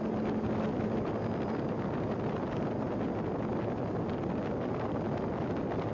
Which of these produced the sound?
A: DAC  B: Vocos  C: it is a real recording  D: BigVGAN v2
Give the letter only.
C